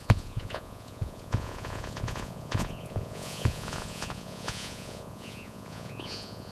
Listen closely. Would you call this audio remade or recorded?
remade